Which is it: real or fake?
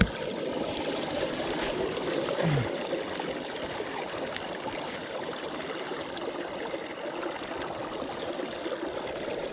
real